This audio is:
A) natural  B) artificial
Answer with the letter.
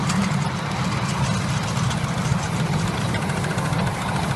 A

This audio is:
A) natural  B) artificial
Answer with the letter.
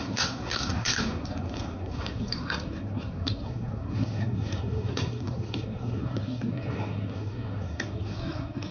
B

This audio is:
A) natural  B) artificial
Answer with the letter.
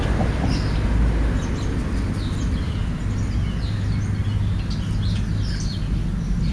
A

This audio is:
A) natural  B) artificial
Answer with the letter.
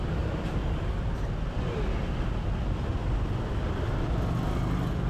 A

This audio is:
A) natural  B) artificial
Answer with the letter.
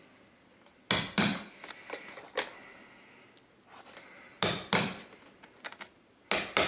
A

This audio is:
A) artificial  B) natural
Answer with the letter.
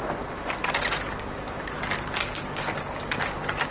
B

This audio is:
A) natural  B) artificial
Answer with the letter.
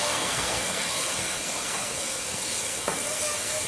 B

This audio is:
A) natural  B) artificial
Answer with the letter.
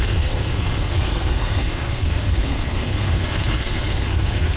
B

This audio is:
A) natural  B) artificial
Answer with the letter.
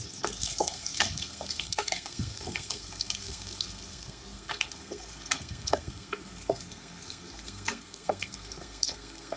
B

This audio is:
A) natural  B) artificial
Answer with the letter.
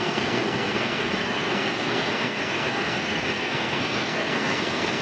B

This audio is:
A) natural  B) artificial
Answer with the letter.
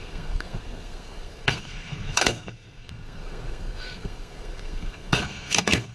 B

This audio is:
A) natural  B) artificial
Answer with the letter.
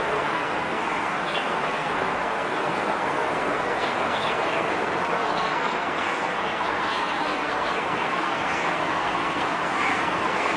B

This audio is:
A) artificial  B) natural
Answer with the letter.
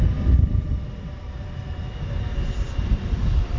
B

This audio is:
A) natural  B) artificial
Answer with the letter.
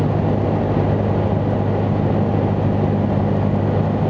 A